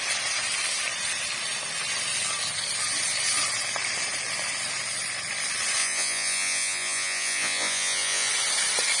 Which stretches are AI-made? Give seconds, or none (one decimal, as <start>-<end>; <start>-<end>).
5.8-8.3